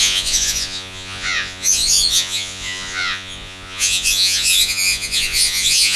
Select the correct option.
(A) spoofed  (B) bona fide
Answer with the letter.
A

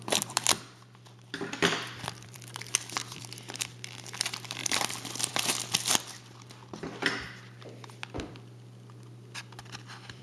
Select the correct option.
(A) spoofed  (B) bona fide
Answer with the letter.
A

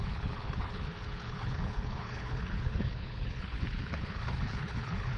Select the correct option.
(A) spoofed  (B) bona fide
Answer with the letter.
A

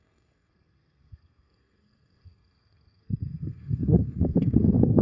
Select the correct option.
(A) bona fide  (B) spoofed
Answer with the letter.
B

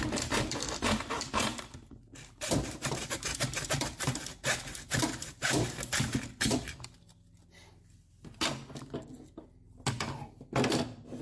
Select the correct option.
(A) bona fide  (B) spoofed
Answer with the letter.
A